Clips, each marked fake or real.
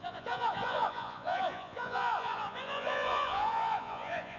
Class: fake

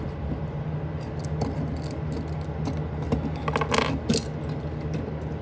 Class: real